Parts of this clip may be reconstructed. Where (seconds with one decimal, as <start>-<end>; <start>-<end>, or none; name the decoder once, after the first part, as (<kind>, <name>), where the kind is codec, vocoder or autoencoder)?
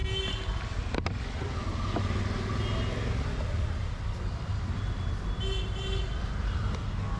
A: none